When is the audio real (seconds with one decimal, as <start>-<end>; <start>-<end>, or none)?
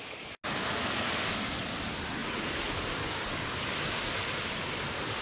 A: 0.0-5.2